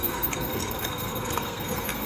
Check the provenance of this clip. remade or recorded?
remade